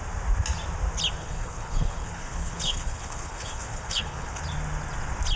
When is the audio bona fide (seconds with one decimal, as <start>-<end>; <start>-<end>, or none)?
0.0-1.2; 4.4-5.4